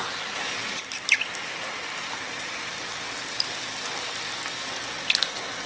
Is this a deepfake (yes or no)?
no